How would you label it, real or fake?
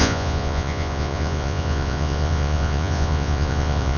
fake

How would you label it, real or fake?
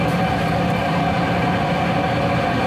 real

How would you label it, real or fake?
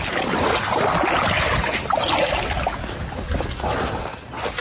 real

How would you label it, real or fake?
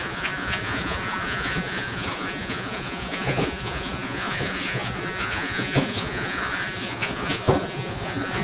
fake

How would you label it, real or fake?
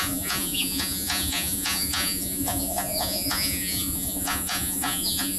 fake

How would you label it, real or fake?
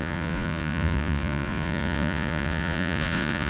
fake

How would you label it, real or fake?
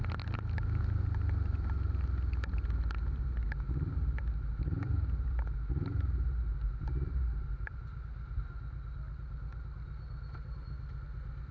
real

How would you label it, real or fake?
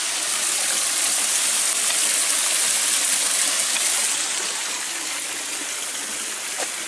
real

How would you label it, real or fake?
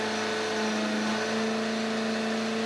real